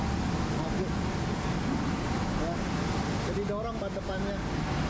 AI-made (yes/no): no